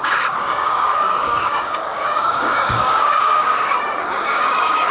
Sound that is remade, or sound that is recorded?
remade